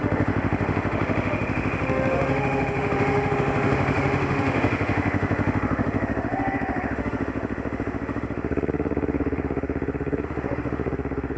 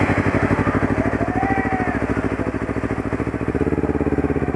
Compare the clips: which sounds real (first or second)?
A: second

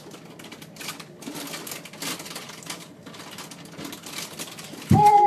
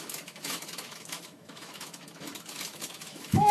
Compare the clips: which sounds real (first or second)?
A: first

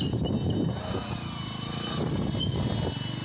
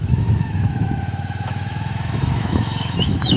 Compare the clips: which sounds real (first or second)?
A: first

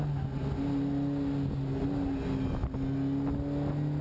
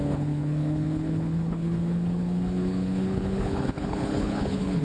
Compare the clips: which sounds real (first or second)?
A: first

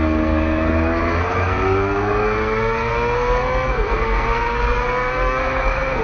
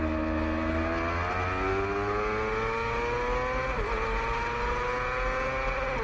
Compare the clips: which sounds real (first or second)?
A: second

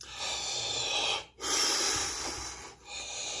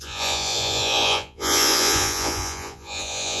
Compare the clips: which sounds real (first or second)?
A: first